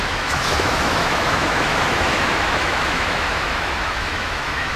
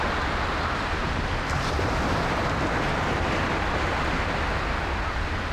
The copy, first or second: first